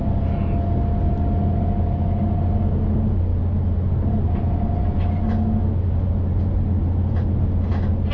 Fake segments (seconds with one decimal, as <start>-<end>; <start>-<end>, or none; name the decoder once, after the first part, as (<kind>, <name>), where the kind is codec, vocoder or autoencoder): none